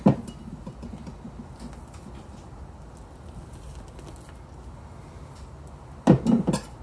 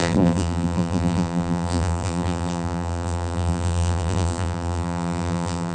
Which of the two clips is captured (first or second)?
first